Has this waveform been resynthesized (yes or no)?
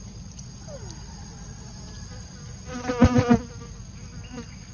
no